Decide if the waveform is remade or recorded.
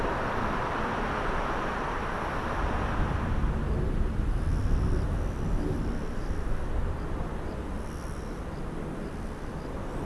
recorded